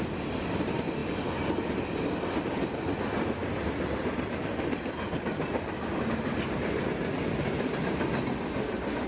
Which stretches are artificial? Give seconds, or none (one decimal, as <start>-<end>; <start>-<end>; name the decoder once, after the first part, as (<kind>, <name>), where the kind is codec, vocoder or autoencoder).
none